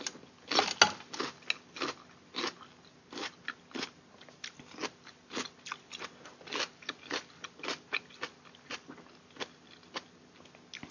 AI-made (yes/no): no